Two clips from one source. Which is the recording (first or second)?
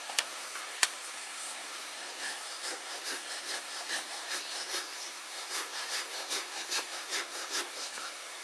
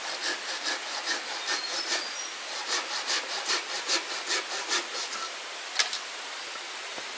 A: second